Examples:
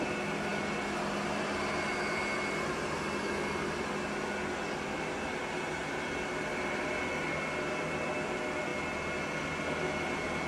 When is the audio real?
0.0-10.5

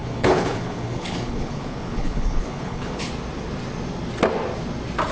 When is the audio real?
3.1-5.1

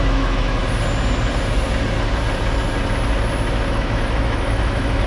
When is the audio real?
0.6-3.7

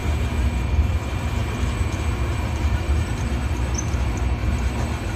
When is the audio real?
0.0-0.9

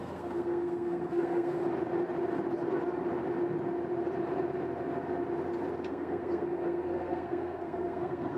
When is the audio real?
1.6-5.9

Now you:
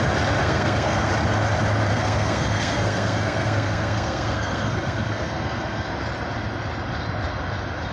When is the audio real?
0.0-0.4; 1.1-1.9; 5.9-7.9

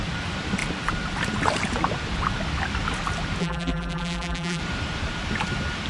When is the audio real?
0.0-3.4; 4.6-5.9